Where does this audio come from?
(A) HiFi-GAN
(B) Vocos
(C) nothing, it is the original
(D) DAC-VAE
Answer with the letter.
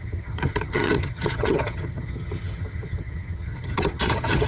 A